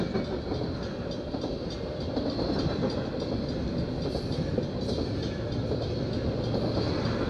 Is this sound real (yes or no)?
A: yes